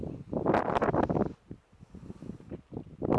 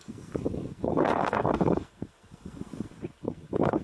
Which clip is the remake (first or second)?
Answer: second